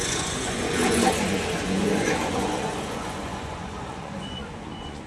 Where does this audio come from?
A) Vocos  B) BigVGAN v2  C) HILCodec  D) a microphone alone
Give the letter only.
A